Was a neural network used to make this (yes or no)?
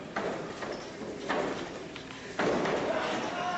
no